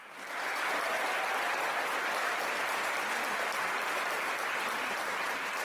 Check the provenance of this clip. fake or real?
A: real